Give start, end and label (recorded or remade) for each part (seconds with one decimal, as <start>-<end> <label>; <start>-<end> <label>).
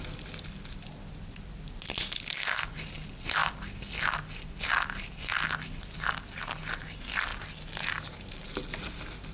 0.0-9.3 recorded